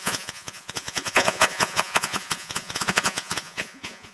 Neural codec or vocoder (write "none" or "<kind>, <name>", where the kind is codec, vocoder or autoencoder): vocoder, Vocos